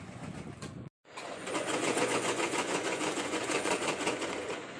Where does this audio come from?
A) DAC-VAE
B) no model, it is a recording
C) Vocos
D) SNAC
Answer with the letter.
C